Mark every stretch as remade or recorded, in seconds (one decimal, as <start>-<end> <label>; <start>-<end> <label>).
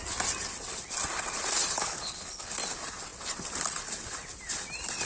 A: 0.0-1.8 recorded; 1.8-2.5 remade; 2.5-5.1 recorded